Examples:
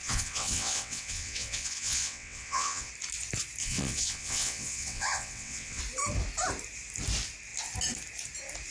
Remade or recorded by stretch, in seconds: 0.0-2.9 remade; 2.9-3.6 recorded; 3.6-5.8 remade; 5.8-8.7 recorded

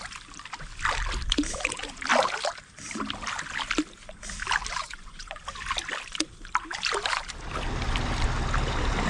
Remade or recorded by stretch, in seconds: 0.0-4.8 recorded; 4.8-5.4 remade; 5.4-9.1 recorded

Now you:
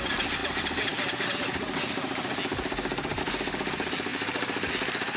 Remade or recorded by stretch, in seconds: 0.0-4.1 recorded; 4.1-4.7 remade; 4.7-5.2 recorded

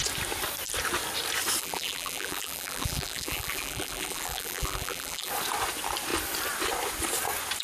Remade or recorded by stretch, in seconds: 0.0-1.6 recorded; 1.6-5.3 remade; 5.3-7.6 recorded

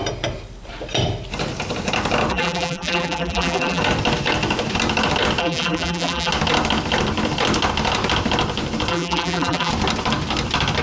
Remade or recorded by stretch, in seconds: 0.0-2.3 recorded; 2.3-3.8 remade; 3.8-5.4 recorded; 5.4-6.3 remade; 6.3-8.9 recorded; 8.9-9.7 remade; 9.7-10.8 recorded

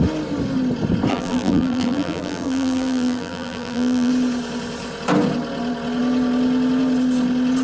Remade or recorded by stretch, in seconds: 0.0-1.1 recorded; 1.1-4.1 remade; 4.1-7.6 recorded

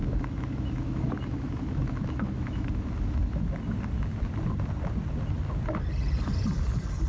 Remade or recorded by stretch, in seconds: 0.0-3.4 remade; 3.4-7.1 recorded

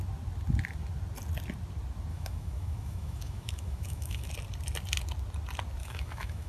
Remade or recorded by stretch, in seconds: 0.0-2.1 recorded; 2.1-4.3 remade; 4.3-5.8 recorded; 5.8-6.5 remade